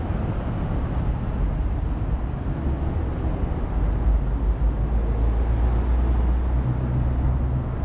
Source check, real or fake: real